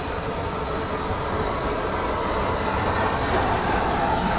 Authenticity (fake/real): real